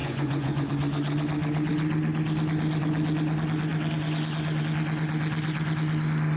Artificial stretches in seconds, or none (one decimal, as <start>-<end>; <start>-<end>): 0.0-0.7